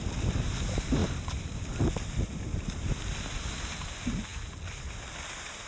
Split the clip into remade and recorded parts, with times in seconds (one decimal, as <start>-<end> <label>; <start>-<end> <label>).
0.0-5.7 recorded